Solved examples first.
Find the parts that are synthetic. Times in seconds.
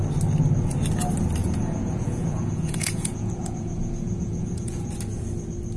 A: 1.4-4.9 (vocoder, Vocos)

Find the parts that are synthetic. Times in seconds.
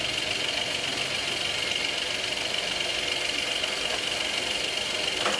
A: none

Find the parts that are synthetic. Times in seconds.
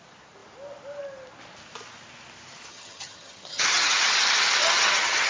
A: 2.7-4.0 (vocoder, HiFi-GAN); 4.6-5.3